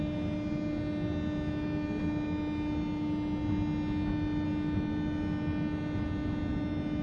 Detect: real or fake real